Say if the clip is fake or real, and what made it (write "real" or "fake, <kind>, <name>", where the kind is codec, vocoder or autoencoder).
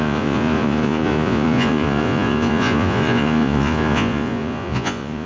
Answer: fake, vocoder, Vocos